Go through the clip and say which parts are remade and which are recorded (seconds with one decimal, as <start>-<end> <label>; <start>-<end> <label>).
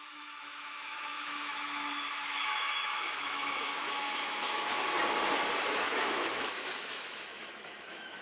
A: 0.0-4.8 remade; 4.8-5.7 recorded; 5.7-8.2 remade